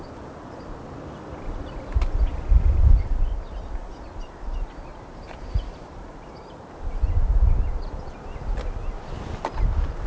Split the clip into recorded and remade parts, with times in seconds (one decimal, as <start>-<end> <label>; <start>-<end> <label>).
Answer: 0.0-2.3 recorded; 2.3-3.2 remade; 3.2-4.9 recorded; 4.9-6.8 remade; 6.8-10.1 recorded